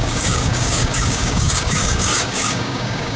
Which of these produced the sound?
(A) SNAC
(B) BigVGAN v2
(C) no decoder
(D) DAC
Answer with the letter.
D